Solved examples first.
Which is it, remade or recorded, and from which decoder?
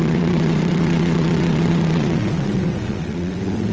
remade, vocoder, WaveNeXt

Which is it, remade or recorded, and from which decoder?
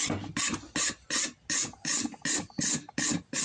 recorded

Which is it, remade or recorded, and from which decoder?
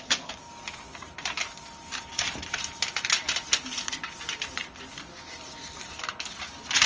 recorded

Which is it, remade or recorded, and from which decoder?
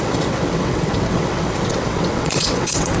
remade, vocoder, WaveNeXt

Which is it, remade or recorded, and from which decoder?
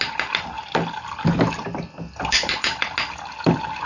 recorded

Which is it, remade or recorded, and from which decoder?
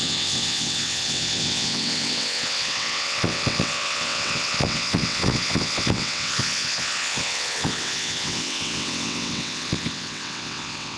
remade, vocoder, WaveNeXt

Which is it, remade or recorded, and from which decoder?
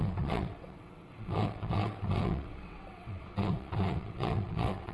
remade, vocoder, WaveNeXt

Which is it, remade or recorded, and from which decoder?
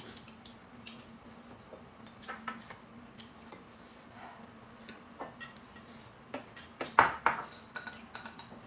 recorded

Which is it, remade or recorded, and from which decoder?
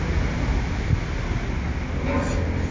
recorded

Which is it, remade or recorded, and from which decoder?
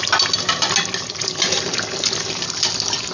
recorded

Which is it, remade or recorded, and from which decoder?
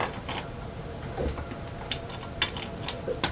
recorded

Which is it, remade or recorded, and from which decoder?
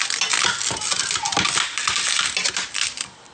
recorded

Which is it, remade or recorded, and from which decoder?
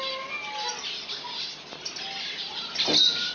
recorded